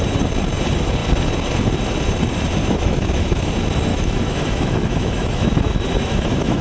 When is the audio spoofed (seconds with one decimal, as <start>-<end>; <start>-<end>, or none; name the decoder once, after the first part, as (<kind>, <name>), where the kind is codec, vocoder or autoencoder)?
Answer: 2.6-3.5 (autoencoder, DAC-VAE); 3.9-6.6